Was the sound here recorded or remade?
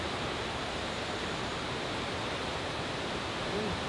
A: remade